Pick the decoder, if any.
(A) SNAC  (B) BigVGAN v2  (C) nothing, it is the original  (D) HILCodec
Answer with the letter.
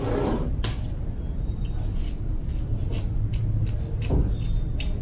C